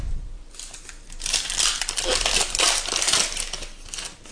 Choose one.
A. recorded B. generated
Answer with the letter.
A